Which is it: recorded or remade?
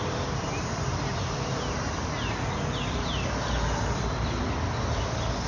recorded